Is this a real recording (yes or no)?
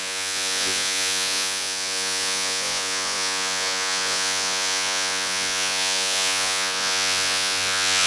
no